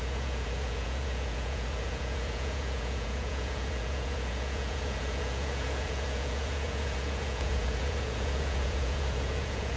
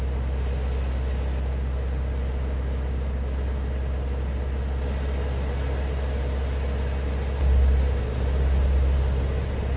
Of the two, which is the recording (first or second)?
second